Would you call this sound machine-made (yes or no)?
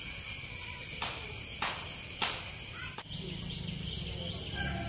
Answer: no